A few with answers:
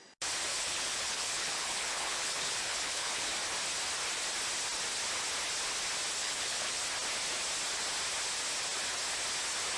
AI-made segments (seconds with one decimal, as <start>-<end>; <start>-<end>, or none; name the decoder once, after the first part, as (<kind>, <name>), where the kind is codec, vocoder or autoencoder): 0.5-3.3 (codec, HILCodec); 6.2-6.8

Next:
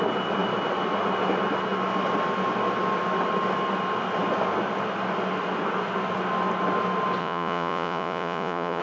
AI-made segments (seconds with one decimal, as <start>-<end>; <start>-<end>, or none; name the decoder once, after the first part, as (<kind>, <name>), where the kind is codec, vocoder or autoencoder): 7.2-8.8 (vocoder, Vocos)

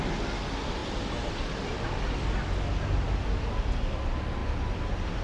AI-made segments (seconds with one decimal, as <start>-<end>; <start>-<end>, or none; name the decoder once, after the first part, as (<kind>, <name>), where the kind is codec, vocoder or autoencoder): none

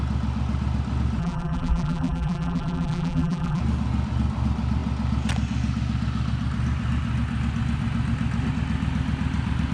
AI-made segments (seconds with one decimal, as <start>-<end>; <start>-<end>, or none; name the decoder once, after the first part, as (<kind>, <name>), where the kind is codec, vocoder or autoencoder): 1.2-3.6 (vocoder, BigVGAN v2)